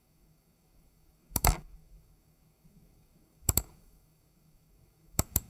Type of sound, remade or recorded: remade